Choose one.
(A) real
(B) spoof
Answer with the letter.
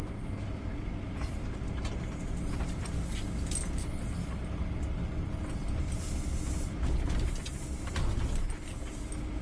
A